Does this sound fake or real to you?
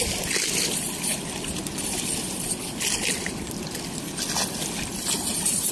real